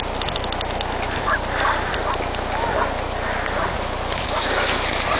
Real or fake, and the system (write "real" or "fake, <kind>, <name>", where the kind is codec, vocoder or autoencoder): real